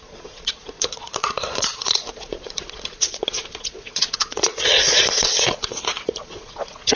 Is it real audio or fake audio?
fake